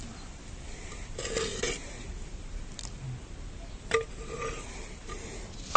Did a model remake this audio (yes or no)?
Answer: no